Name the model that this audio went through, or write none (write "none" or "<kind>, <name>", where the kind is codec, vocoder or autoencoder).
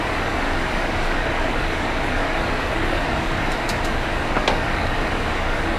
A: codec, DAC